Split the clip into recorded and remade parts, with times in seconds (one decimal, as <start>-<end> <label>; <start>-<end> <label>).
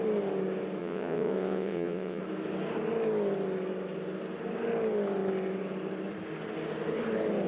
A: 0.0-0.8 recorded; 0.8-2.2 remade; 2.2-7.5 recorded